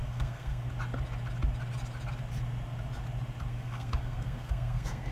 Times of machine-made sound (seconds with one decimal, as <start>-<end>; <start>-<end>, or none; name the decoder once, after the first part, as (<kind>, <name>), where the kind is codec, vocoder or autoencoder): 0.0-0.7 (codec, SNAC); 3.5-5.1